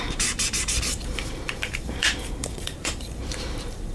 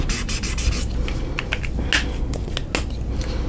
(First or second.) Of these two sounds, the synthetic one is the first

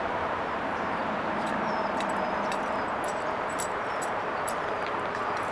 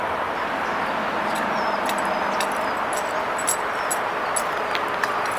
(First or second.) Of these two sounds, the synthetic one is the first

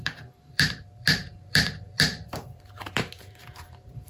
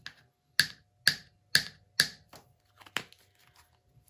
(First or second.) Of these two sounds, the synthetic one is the first